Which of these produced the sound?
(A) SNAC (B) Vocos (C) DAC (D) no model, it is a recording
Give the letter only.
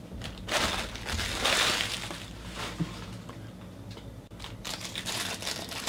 D